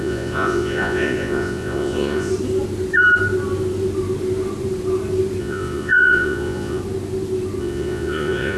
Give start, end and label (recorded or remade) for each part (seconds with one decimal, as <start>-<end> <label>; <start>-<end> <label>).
0.0-2.3 remade; 2.3-5.4 recorded; 5.4-6.8 remade; 6.8-7.6 recorded; 7.6-8.6 remade